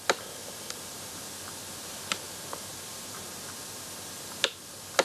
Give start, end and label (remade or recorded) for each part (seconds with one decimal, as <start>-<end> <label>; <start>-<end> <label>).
0.0-0.4 recorded; 0.4-1.2 remade; 1.2-2.7 recorded; 2.7-3.3 remade; 3.3-5.0 recorded